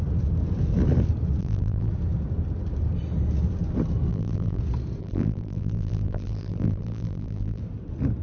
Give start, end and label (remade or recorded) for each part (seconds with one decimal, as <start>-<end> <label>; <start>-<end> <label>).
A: 0.0-1.4 recorded; 1.4-1.9 remade; 1.9-4.1 recorded; 4.1-4.6 remade; 4.6-5.0 recorded; 5.0-7.6 remade; 7.6-8.2 recorded